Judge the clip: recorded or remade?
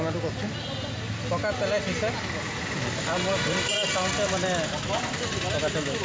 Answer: recorded